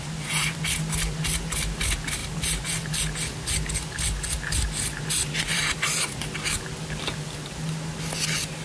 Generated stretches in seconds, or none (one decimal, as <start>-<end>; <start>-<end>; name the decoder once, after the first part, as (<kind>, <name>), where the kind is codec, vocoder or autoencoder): 2.2-2.9 (vocoder, BigVGAN v2); 5.5-6.0